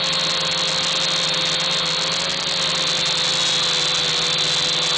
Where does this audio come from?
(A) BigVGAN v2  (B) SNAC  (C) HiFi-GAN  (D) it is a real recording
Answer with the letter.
D